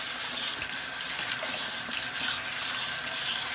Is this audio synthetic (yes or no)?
no